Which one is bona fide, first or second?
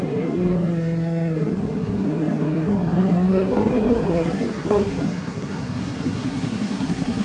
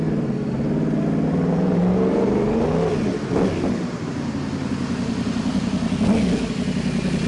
second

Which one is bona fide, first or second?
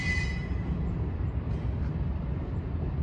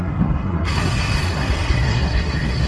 first